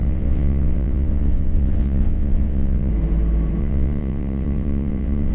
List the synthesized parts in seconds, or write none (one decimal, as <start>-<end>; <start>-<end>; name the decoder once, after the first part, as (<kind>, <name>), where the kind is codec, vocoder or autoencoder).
0.0-2.9 (vocoder, WaveNeXt); 3.6-5.3